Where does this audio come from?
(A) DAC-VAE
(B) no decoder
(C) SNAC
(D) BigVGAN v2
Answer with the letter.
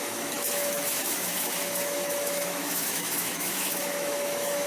A